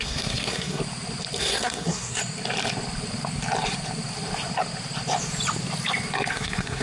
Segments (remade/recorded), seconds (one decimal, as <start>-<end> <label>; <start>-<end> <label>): 0.0-0.8 remade; 0.8-1.4 recorded; 1.4-2.2 remade; 2.2-6.3 recorded; 6.3-6.8 remade